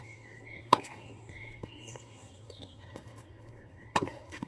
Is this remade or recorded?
remade